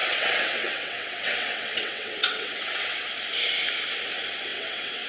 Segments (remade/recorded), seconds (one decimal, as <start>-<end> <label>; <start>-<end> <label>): 0.0-3.1 remade; 3.1-4.5 recorded; 4.5-5.1 remade